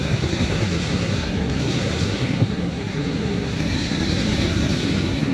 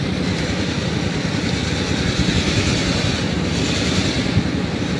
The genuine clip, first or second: second